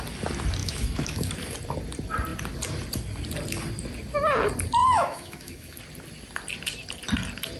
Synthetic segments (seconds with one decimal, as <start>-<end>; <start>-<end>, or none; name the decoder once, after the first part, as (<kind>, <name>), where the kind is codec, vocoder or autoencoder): 0.6-1.3 (autoencoder, DAC-VAE); 4.8-5.8